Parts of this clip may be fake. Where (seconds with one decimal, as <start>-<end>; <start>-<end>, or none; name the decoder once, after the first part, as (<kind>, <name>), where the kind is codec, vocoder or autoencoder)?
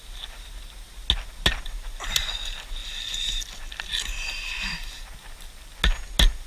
none